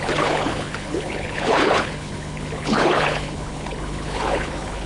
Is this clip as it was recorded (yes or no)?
no